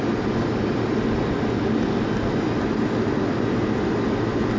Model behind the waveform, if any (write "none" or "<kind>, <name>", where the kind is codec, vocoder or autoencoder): none